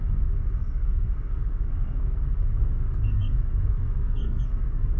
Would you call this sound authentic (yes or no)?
no